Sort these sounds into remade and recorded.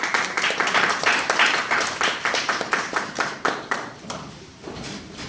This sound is remade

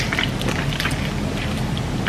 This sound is recorded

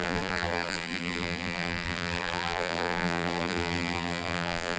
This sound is remade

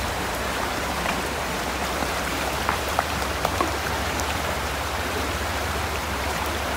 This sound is remade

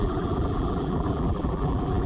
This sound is remade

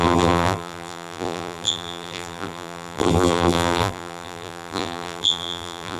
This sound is remade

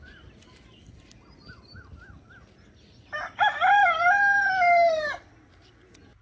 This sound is remade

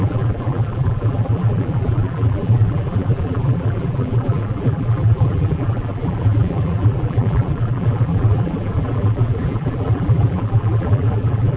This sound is remade